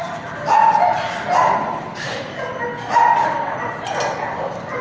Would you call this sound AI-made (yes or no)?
no